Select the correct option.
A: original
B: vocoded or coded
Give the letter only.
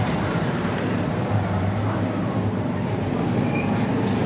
B